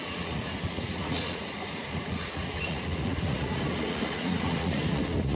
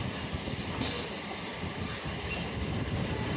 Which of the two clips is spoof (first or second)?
first